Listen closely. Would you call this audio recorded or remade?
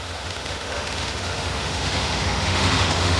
remade